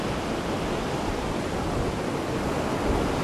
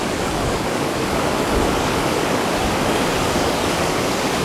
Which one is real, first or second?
first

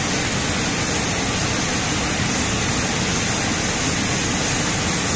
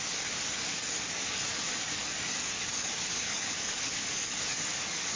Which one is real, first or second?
first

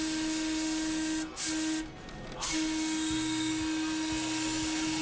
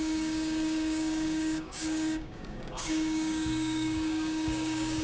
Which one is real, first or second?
first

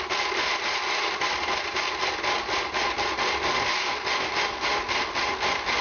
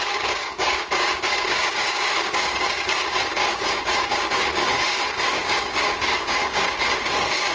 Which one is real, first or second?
first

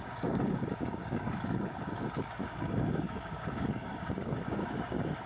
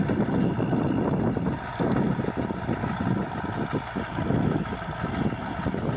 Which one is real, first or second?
second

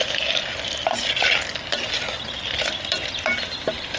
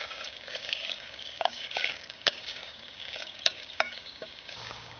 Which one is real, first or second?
first